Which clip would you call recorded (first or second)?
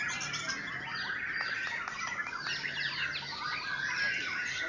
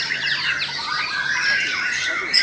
first